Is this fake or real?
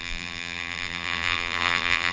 fake